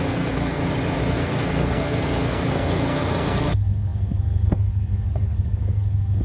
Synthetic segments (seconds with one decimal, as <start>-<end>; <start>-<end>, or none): 0.0-0.6; 1.1-6.2